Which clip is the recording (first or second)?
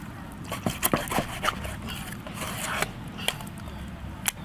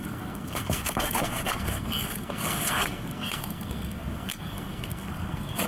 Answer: first